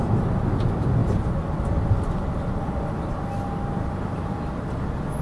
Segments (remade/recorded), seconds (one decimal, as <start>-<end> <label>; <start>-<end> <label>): 0.0-5.2 recorded